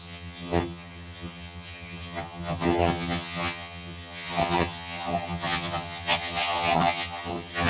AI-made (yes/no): yes